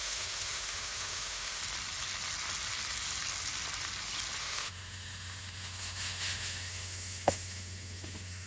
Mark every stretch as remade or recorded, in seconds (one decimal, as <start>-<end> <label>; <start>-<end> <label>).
0.0-1.6 remade; 1.6-4.4 recorded; 4.4-8.5 remade